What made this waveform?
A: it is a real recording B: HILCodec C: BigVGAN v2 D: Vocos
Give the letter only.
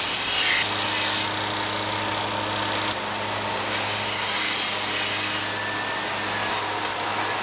A